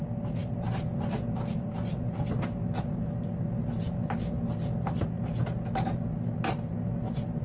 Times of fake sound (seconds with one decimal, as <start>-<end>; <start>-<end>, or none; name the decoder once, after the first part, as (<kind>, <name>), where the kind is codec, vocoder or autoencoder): none